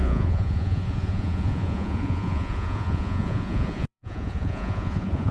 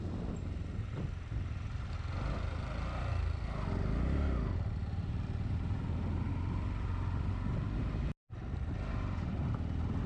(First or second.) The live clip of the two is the second